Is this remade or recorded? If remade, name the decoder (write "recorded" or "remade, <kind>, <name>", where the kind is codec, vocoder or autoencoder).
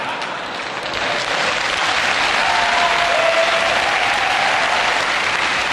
recorded